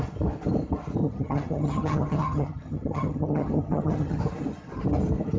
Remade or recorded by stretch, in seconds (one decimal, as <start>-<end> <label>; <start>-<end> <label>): 0.0-1.0 recorded; 1.0-4.2 remade; 4.2-5.4 recorded